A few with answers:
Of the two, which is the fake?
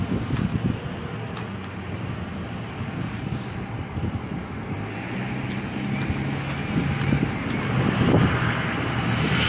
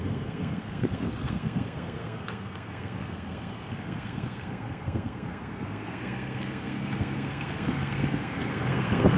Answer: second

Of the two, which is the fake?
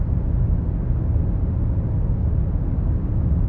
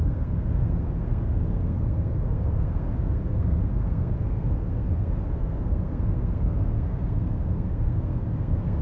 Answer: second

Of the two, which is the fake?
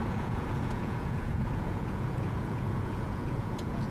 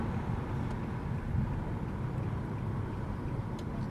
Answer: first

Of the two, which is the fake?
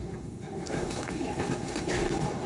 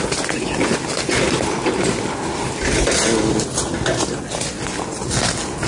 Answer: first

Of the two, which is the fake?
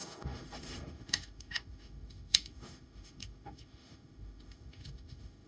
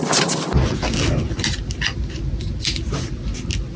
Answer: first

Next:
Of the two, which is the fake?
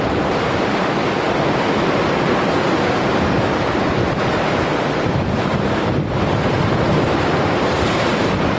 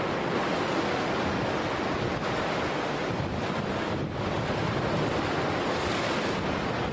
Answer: first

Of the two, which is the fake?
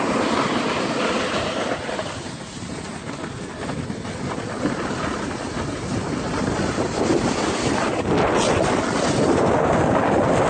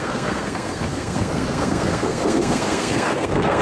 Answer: second